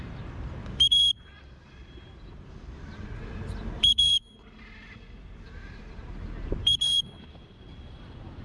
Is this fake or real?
fake